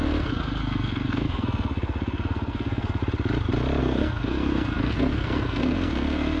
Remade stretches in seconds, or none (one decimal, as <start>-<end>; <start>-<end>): 0.0-3.0; 3.8-6.4